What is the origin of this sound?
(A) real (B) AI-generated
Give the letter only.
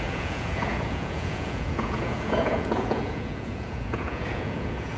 B